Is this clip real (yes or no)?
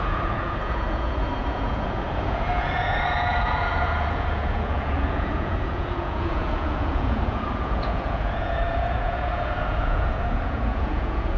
no